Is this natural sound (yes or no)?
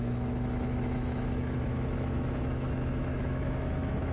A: no